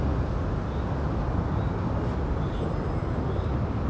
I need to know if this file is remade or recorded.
recorded